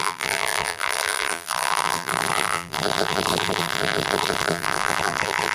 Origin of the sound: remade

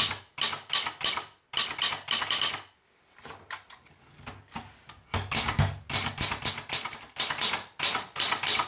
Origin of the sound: recorded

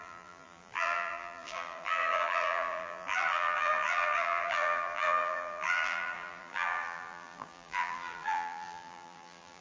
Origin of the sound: remade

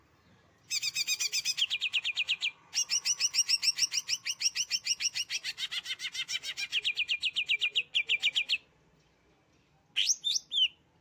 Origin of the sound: recorded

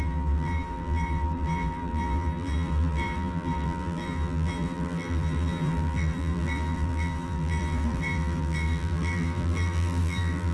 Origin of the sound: remade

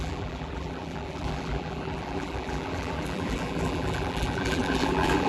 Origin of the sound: remade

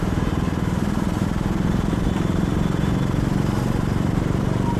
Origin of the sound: remade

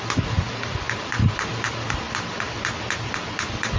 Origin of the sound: remade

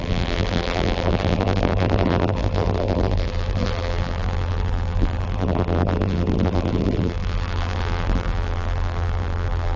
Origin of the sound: remade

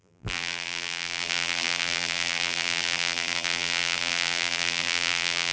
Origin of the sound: remade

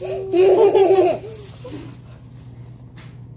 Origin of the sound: recorded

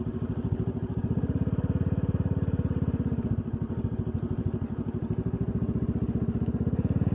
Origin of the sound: recorded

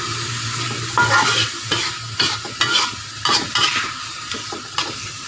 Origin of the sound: remade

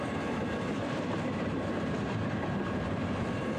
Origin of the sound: remade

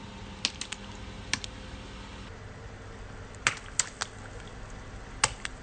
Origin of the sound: recorded